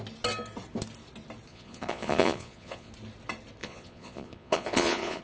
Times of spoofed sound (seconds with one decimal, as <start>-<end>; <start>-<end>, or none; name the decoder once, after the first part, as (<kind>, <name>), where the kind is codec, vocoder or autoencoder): 1.5-2.9 (vocoder, Vocos); 3.6-5.2